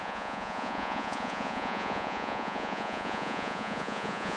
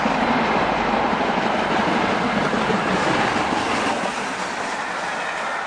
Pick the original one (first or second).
second